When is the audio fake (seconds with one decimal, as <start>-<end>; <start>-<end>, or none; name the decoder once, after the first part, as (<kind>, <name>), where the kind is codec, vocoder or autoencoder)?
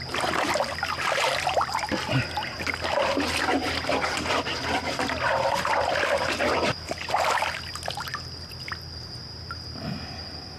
none